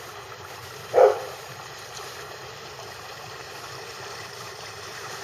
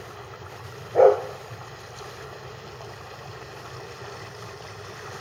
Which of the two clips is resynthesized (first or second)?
first